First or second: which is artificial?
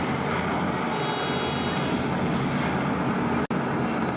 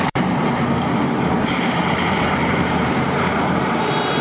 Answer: second